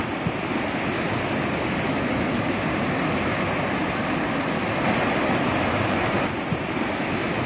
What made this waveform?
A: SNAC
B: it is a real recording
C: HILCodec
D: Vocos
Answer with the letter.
B